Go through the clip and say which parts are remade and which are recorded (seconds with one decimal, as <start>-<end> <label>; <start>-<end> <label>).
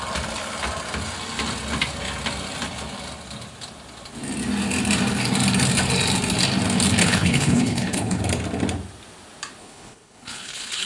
0.0-7.0 recorded; 7.0-8.2 remade; 8.2-9.6 recorded; 9.6-10.9 remade